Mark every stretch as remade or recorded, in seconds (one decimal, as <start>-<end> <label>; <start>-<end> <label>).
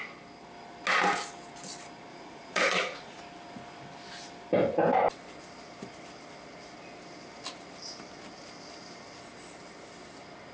0.0-2.1 recorded; 2.1-3.2 remade; 3.2-10.5 recorded